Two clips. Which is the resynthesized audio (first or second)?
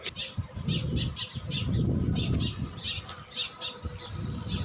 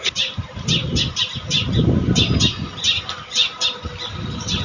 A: second